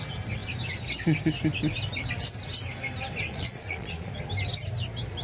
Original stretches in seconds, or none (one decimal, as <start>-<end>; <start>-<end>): 0.0-3.3; 4.1-5.2